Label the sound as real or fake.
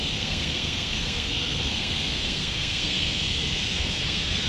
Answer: fake